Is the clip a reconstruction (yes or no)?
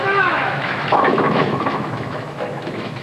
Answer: yes